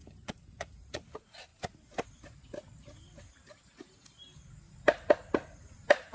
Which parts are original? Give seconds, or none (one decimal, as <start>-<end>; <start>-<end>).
1.0-6.1